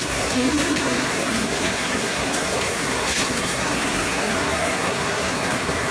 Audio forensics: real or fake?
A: fake